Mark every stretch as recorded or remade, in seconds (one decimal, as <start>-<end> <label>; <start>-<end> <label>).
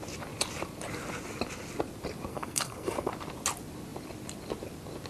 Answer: 0.0-2.3 recorded; 2.3-3.1 remade; 3.1-5.1 recorded